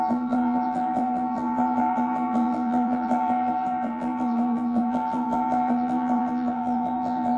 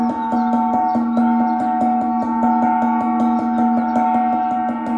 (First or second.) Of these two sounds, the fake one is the first